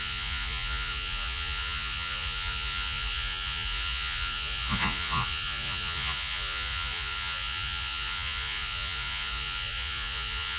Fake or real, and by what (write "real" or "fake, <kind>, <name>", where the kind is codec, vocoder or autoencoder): fake, vocoder, Vocos